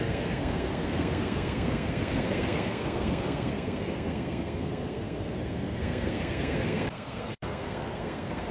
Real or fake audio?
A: fake